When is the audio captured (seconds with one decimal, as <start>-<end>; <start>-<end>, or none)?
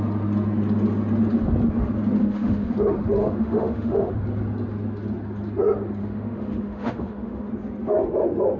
0.0-2.2; 2.7-3.2; 4.1-6.0; 7.5-8.6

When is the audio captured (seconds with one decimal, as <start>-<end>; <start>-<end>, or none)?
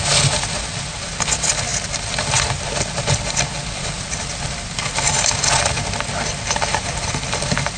0.0-7.8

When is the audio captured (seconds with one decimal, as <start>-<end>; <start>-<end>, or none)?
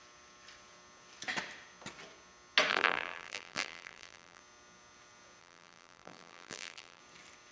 0.0-2.7; 4.4-5.4; 7.0-7.5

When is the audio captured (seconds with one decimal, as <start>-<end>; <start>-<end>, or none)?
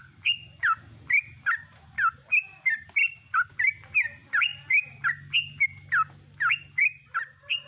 0.0-7.7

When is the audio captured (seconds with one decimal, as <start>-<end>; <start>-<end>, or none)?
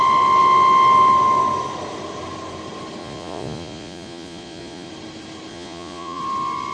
0.0-3.0; 4.9-5.5; 6.2-6.7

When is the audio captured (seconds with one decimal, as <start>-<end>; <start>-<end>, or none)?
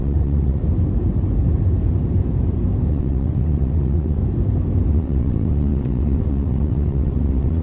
0.6-2.9; 4.2-4.9